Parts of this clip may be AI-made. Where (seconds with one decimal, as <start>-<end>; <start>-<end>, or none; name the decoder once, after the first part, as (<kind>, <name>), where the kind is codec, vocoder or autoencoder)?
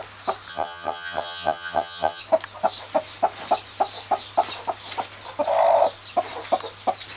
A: 0.5-2.2 (vocoder, HiFi-GAN)